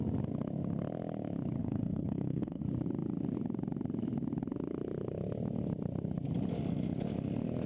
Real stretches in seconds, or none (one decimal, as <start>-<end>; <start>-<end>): 0.0-1.6; 2.6-7.7